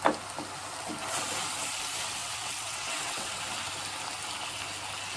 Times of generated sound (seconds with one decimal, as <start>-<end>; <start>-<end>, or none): 2.2-3.4